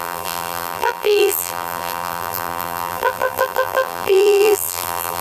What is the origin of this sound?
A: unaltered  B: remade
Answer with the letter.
B